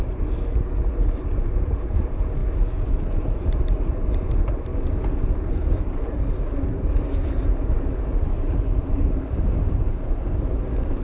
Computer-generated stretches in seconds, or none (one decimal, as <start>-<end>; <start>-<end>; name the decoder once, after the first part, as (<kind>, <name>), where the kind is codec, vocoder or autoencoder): 0.0-4.7 (vocoder, BigVGAN v2); 5.5-11.0